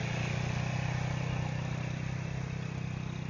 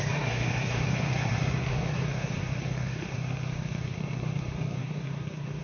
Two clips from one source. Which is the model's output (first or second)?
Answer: second